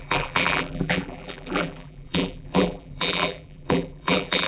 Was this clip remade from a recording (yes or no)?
yes